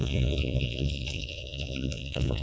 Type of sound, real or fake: fake